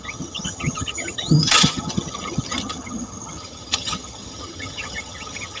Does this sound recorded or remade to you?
remade